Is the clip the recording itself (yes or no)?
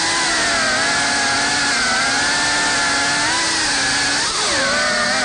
yes